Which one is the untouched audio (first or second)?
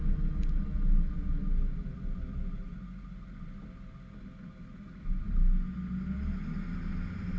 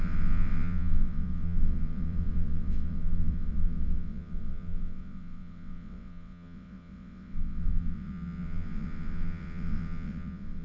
first